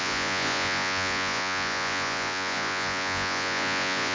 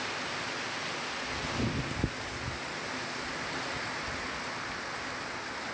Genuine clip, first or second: second